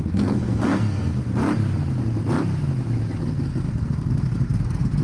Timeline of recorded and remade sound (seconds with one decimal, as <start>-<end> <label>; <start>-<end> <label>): 0.0-1.4 remade; 1.4-3.2 recorded; 3.2-5.0 remade

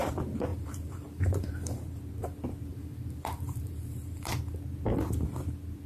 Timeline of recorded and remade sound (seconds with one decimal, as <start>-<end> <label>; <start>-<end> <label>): 0.0-0.5 recorded; 0.5-2.0 remade; 2.0-2.7 recorded; 2.7-4.4 remade; 4.4-5.9 recorded

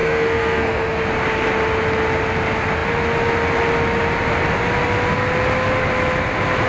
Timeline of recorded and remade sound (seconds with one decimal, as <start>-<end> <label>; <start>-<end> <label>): 0.0-1.0 remade; 1.0-6.7 recorded

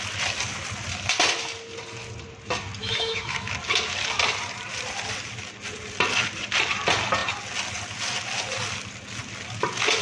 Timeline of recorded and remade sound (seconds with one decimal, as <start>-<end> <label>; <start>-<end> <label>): 0.0-2.8 recorded; 2.8-3.5 remade; 3.5-10.0 recorded

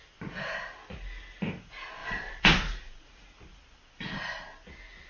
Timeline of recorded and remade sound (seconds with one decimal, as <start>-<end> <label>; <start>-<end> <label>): 0.0-2.0 recorded; 2.0-2.5 remade; 2.5-5.1 recorded

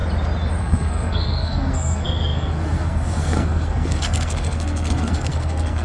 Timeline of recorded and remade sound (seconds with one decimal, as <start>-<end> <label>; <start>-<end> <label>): 0.0-0.6 recorded; 0.6-5.8 remade

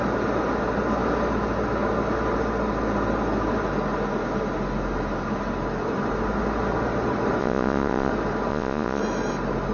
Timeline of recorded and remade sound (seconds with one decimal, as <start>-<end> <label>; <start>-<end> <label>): 0.0-7.4 recorded; 7.4-8.1 remade; 8.1-8.5 recorded; 8.5-9.0 remade; 9.0-9.7 recorded